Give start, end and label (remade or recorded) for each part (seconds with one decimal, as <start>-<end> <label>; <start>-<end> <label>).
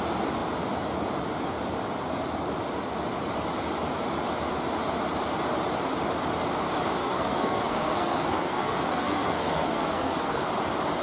0.0-7.0 recorded; 7.0-10.5 remade; 10.5-11.0 recorded